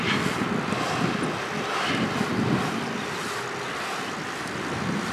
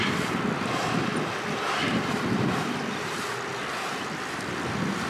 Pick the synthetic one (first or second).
second